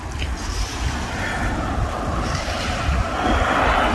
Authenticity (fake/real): real